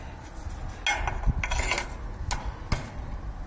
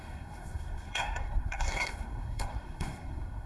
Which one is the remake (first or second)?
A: second